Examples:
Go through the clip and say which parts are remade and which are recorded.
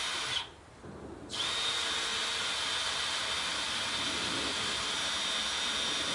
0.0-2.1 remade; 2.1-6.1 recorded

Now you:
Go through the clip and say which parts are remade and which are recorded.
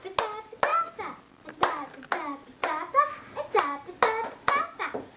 0.0-5.2 recorded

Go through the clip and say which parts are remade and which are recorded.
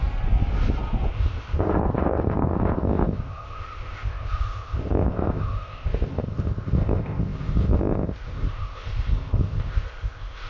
0.0-1.1 recorded; 1.1-10.5 remade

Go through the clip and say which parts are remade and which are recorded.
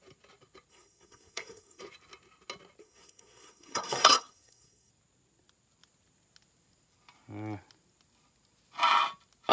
0.0-0.7 recorded; 0.7-1.8 remade; 1.8-2.8 recorded; 2.8-4.9 remade; 4.9-9.5 recorded